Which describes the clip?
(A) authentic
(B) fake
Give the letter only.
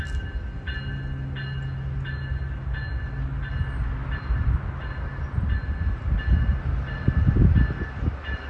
A